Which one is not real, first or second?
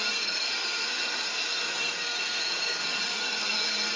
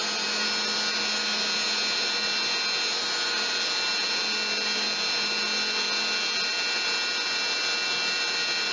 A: first